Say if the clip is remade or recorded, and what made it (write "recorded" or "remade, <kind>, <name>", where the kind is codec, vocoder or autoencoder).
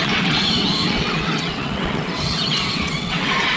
remade, vocoder, WaveNeXt